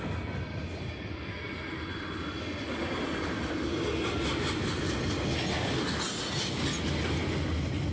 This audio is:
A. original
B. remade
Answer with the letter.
A